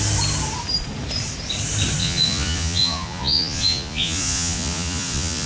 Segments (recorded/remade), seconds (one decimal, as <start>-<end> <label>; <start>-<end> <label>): 0.0-2.0 recorded; 2.0-5.5 remade